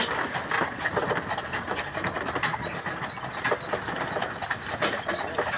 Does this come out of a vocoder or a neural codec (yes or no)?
no